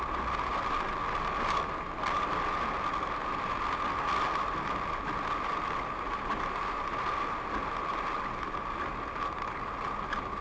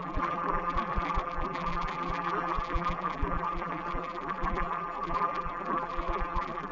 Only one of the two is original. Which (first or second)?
first